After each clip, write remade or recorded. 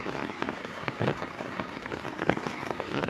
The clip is remade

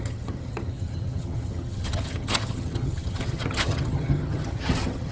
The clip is remade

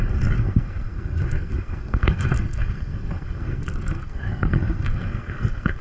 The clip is remade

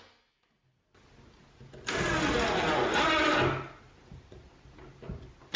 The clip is recorded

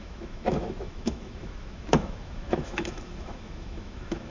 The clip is remade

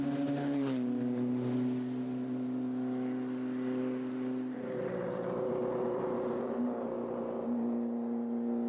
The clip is recorded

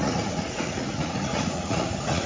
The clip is remade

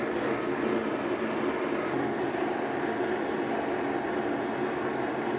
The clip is recorded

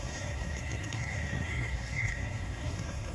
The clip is remade